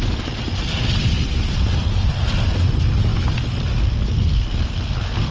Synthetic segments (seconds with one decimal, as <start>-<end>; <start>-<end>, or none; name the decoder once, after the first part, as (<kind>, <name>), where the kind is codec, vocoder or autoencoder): none